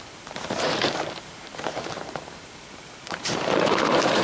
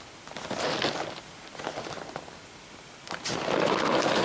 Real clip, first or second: second